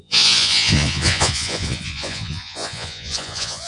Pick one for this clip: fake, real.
fake